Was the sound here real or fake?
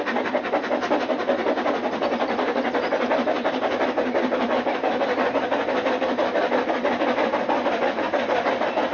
fake